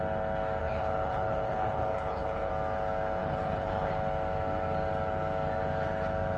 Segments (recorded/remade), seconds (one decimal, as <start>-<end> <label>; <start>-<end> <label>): 0.0-0.6 recorded; 0.6-2.5 remade; 2.5-3.2 recorded; 3.2-3.9 remade; 3.9-6.4 recorded